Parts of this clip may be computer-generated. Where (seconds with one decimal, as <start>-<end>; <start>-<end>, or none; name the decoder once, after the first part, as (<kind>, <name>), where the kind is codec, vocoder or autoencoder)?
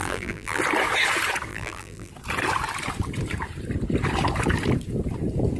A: 0.0-0.6 (vocoder, BigVGAN v2); 1.5-2.1